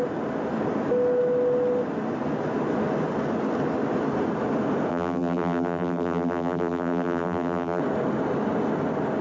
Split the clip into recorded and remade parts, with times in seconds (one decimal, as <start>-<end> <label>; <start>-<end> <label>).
0.0-4.9 recorded; 4.9-7.8 remade; 7.8-9.2 recorded